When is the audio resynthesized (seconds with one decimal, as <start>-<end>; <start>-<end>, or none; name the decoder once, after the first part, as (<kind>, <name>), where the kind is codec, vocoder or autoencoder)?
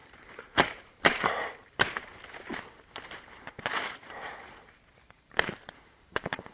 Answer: 0.0-2.1 (vocoder, BigVGAN v2); 4.0-6.5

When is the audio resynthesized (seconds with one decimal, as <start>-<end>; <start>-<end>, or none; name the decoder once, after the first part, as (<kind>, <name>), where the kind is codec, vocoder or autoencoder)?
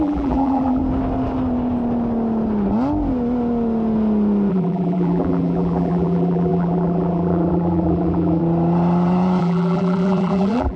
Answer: 0.0-0.8 (vocoder, BigVGAN v2); 4.5-8.4; 9.4-10.8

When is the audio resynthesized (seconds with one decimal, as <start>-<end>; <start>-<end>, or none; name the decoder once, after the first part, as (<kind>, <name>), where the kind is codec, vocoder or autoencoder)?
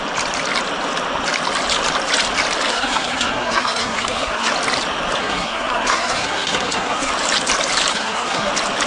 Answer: 2.7-4.5 (codec, SNAC); 5.2-7.1; 7.9-8.5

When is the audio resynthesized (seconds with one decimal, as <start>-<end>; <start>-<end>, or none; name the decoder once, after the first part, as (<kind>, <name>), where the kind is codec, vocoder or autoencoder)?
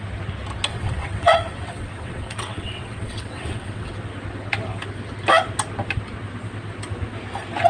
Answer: 0.7-3.9 (vocoder, WaveNeXt)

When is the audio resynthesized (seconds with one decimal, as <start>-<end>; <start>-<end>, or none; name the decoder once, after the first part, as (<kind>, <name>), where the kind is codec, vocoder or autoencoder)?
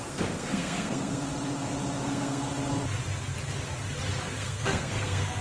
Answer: 0.0-1.3 (codec, SNAC); 2.0-2.5; 4.2-5.4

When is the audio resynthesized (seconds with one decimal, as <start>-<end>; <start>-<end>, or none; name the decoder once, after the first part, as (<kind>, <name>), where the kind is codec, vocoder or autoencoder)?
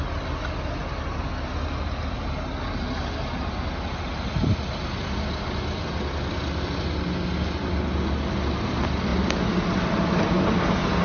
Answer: none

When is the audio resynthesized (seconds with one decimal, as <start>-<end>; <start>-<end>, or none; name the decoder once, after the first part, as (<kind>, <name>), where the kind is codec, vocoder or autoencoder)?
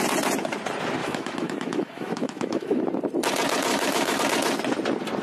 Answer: 1.0-2.8 (autoencoder, DAC-VAE); 3.7-4.2